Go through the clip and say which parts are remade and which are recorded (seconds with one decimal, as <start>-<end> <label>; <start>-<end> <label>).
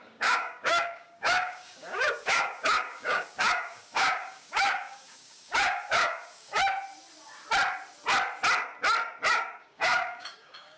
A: 0.0-6.6 remade; 6.6-9.3 recorded; 9.3-10.8 remade